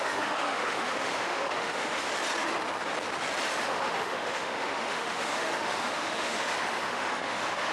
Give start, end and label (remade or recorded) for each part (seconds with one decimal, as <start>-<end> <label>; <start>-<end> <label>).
0.0-2.1 remade; 2.1-3.5 recorded; 3.5-7.7 remade